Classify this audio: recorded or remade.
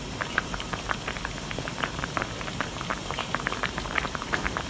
remade